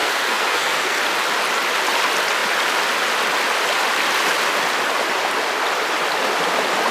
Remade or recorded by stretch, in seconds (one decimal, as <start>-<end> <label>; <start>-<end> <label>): 0.0-1.0 remade; 1.0-6.9 recorded